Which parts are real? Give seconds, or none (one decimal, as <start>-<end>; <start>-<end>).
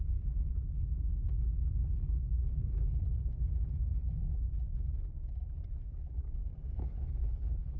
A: 0.0-6.8